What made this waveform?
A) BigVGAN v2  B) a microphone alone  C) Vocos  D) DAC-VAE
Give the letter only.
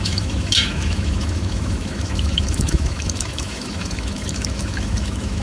D